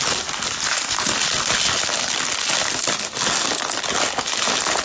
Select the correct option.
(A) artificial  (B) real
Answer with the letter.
B